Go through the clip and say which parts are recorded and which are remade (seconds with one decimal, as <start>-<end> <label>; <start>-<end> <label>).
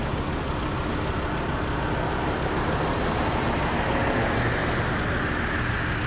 0.0-6.1 recorded